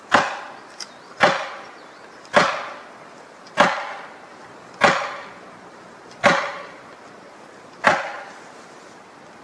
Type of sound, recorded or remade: recorded